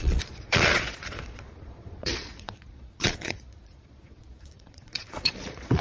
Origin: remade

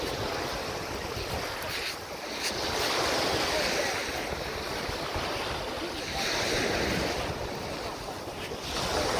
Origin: recorded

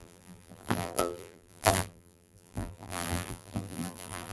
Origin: remade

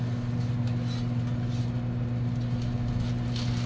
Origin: recorded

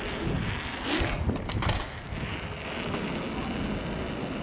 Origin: recorded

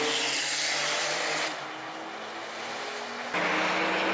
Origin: recorded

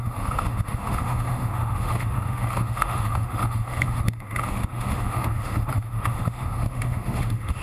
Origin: remade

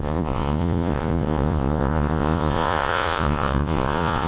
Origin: remade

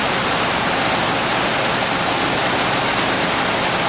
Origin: recorded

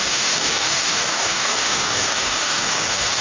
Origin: remade